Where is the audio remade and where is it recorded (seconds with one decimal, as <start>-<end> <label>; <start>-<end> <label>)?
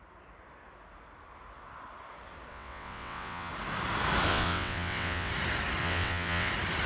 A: 0.0-2.5 recorded; 2.5-3.5 remade; 3.5-4.3 recorded; 4.3-5.3 remade; 5.3-5.8 recorded; 5.8-6.5 remade; 6.5-6.9 recorded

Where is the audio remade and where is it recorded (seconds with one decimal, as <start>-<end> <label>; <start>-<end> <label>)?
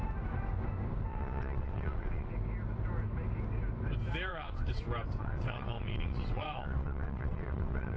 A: 0.0-1.1 recorded; 1.1-2.3 remade; 2.3-4.3 recorded; 4.3-4.8 remade; 4.8-5.2 recorded; 5.2-8.0 remade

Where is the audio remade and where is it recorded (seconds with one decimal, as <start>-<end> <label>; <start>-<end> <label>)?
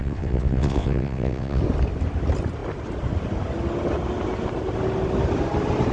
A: 0.0-1.6 remade; 1.6-5.9 recorded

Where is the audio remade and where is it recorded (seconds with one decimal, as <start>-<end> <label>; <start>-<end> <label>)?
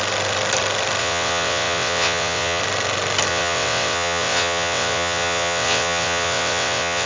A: 0.0-1.0 recorded; 1.0-2.6 remade; 2.6-3.3 recorded; 3.3-7.1 remade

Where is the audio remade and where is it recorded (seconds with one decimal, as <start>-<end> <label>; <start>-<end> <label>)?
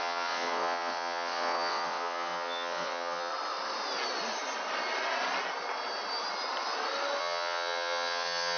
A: 0.0-3.3 remade; 3.3-7.2 recorded; 7.2-8.6 remade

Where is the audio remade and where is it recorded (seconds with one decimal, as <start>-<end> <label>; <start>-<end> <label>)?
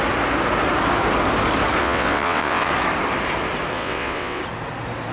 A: 0.0-1.8 recorded; 1.8-2.7 remade; 2.7-3.7 recorded; 3.7-4.4 remade; 4.4-5.1 recorded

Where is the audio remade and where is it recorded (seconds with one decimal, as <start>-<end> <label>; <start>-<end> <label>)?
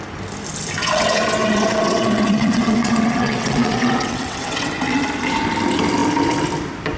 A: 0.0-0.8 recorded; 0.8-5.0 remade; 5.0-7.0 recorded